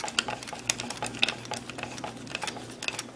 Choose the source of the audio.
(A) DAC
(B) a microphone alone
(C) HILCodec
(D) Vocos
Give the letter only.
B